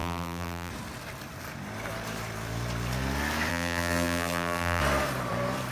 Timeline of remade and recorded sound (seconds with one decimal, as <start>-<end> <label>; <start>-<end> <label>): 0.0-0.7 remade; 0.7-3.5 recorded; 3.5-4.8 remade; 4.8-5.7 recorded